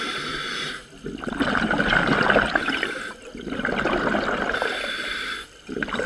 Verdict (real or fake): real